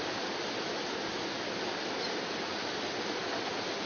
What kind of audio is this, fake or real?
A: real